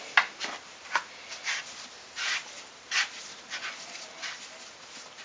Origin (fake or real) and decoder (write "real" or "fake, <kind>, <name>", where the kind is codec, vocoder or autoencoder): real